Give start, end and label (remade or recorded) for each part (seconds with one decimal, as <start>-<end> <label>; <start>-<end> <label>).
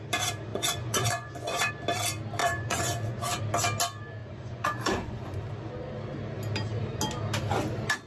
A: 0.0-0.5 recorded; 0.5-1.7 remade; 1.7-2.4 recorded; 2.4-3.4 remade; 3.4-4.2 recorded; 4.2-5.4 remade; 5.4-8.1 recorded